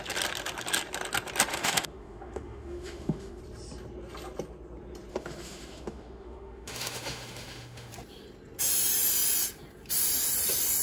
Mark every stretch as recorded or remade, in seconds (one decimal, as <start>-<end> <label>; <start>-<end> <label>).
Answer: 0.0-1.5 recorded; 1.5-3.4 remade; 3.4-5.1 recorded; 5.1-7.9 remade; 7.9-10.8 recorded